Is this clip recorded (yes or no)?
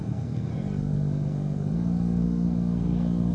no